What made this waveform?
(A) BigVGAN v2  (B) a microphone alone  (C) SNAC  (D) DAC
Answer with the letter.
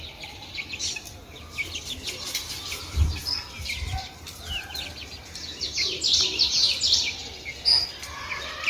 B